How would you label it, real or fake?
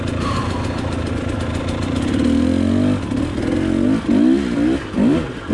real